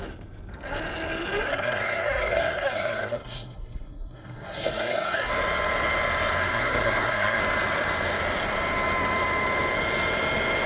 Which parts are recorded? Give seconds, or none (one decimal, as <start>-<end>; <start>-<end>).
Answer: 0.0-1.5; 5.3-6.4; 7.4-10.7

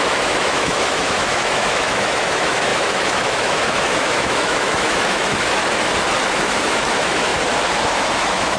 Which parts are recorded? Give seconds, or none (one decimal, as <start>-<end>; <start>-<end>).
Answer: 5.6-6.3; 7.3-7.8

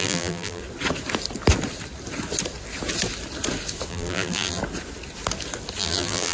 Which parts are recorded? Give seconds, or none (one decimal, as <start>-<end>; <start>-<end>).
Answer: 0.6-3.9; 4.6-5.8